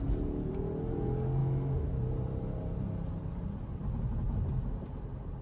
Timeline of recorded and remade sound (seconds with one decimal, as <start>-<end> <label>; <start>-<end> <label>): 0.0-1.4 recorded; 1.4-2.0 remade; 2.0-5.4 recorded